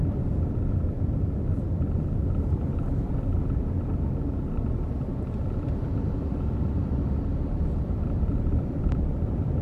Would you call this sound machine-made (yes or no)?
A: yes